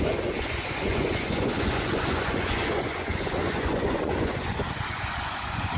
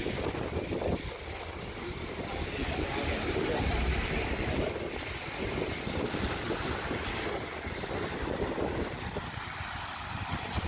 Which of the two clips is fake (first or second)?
first